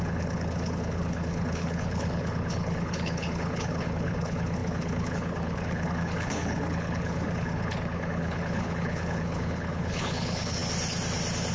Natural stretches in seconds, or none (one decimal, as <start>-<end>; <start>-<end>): 10.6-11.5